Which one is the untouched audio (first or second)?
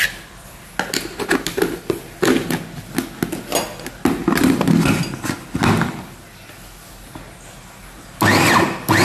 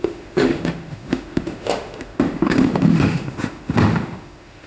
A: first